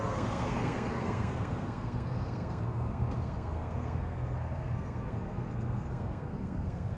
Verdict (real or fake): fake